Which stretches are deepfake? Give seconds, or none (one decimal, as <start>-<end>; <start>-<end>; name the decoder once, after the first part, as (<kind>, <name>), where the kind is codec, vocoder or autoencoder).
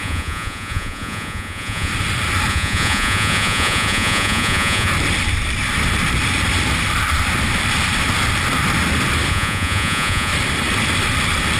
0.0-1.9 (vocoder, Vocos); 2.5-4.9; 9.3-10.3